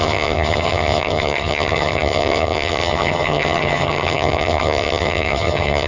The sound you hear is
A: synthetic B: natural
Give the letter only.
A